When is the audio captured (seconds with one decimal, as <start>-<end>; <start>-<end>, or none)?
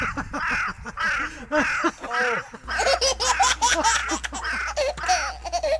0.0-5.8